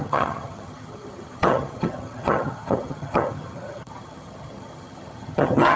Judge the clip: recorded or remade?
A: remade